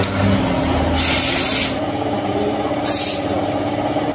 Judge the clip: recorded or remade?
recorded